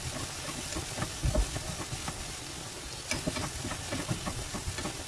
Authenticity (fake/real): real